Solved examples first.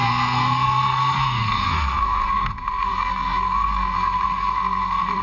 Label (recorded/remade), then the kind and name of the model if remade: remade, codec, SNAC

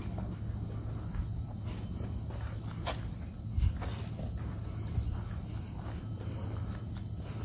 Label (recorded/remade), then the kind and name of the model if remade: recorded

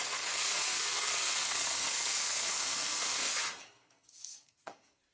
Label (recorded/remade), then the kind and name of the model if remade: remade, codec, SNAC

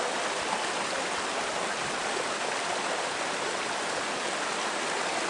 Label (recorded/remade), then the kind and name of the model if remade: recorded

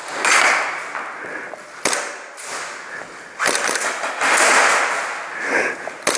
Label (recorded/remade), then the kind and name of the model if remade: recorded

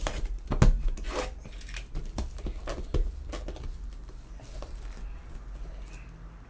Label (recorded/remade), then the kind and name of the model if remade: recorded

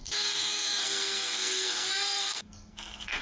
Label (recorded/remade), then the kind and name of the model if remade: remade, codec, SNAC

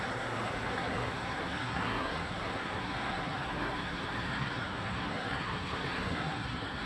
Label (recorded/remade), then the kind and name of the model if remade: remade, codec, SNAC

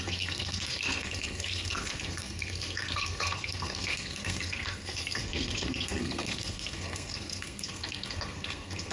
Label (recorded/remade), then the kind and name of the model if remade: remade, codec, SNAC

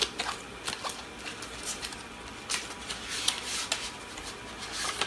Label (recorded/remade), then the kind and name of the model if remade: recorded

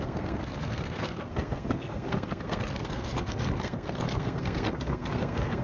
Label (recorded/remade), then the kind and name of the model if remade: remade, codec, SNAC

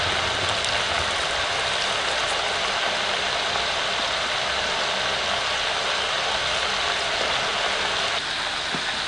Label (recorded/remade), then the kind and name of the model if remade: recorded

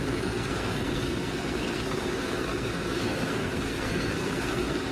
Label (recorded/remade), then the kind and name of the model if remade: remade, codec, SNAC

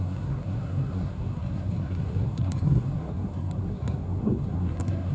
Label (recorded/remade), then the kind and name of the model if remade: remade, codec, SNAC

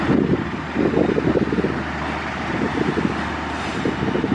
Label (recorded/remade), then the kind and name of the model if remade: recorded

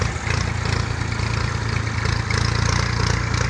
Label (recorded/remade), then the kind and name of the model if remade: recorded